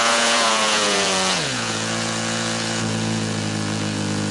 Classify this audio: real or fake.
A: fake